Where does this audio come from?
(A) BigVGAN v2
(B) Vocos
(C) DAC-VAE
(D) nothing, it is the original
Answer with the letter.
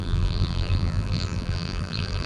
A